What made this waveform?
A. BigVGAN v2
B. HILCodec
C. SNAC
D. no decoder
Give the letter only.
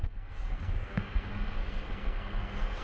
C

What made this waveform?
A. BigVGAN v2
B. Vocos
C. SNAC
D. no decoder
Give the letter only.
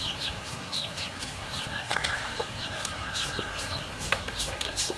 C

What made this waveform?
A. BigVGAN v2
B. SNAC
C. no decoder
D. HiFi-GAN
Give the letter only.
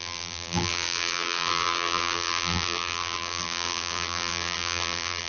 A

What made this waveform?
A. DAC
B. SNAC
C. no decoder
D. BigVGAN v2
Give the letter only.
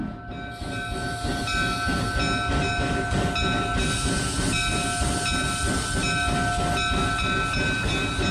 C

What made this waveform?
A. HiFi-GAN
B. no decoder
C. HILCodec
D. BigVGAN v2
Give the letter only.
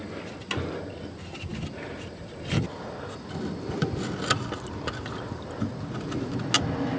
B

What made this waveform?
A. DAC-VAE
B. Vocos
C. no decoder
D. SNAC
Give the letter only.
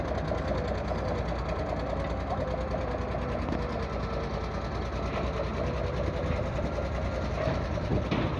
C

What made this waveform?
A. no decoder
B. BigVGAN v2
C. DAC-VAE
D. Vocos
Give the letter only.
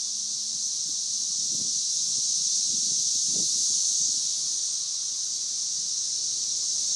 D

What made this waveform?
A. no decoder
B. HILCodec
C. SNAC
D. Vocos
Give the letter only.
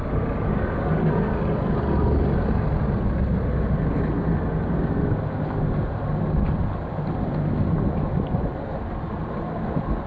A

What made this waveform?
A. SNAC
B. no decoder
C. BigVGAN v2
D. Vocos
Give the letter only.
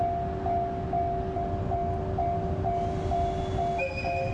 B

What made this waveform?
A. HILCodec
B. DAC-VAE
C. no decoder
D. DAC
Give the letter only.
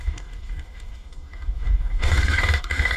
D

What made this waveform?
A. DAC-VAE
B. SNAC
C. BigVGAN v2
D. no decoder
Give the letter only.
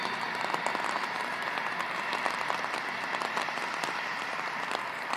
D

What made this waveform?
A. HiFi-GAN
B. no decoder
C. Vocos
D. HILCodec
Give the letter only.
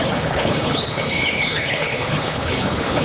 D